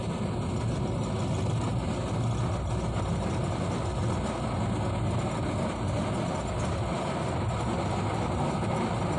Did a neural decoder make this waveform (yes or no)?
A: no